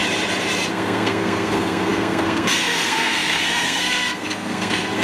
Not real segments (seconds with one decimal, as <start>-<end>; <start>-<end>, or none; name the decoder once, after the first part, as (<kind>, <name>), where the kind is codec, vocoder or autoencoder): 0.7-5.0 (codec, SNAC)